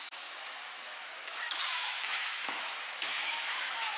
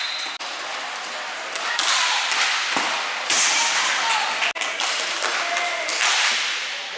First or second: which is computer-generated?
first